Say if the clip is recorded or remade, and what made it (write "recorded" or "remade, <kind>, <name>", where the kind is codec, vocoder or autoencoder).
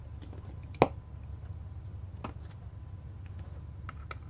recorded